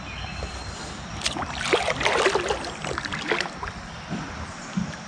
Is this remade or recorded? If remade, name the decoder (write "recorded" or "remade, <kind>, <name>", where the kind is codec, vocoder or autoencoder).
recorded